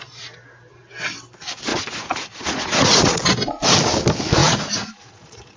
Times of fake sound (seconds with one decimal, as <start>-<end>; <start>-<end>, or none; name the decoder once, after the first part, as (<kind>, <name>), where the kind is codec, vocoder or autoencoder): 1.7-3.2 (vocoder, Vocos); 4.4-5.6